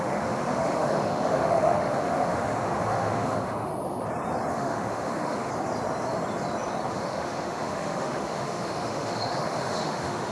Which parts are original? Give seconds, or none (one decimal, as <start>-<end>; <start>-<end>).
3.7-4.5; 5.5-6.9